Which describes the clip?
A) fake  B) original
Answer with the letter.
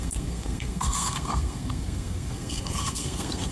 A